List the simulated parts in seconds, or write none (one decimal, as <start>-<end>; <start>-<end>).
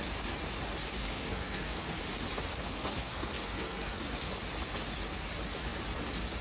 1.0-2.0; 2.5-4.3